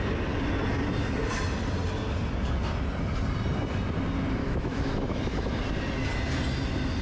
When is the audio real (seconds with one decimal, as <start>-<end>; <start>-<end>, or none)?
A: 0.0-4.4; 5.6-7.0